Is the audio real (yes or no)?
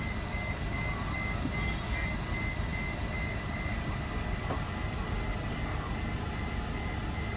yes